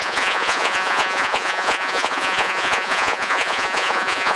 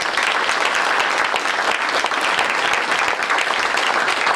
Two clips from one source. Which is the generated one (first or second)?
first